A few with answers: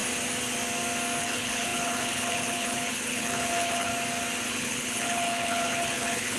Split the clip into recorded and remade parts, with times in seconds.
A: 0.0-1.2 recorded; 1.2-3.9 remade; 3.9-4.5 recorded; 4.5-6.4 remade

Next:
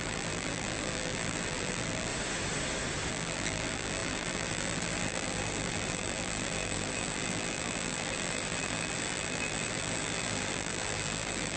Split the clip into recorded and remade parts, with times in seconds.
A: 0.0-2.1 remade; 2.1-3.1 recorded; 3.1-11.6 remade

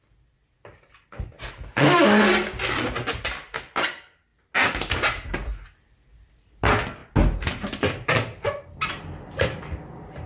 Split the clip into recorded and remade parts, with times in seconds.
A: 0.0-10.3 recorded

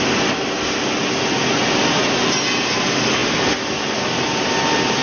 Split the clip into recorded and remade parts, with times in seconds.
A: 0.0-5.0 recorded

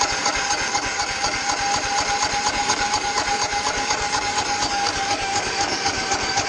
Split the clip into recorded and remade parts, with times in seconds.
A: 0.0-1.4 remade; 1.4-2.5 recorded; 2.5-6.5 remade

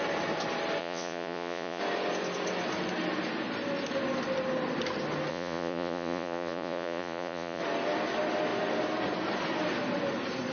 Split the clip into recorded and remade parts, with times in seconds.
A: 0.0-0.8 recorded; 0.8-1.8 remade; 1.8-5.3 recorded; 5.3-7.6 remade; 7.6-10.5 recorded